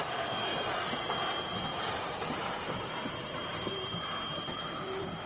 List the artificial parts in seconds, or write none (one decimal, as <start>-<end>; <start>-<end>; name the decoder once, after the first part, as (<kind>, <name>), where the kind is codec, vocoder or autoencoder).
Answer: 0.5-1.1 (vocoder, BigVGAN v2); 1.7-5.3